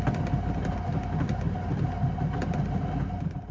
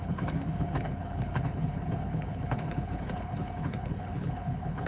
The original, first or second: first